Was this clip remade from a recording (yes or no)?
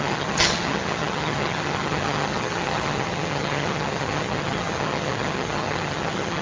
yes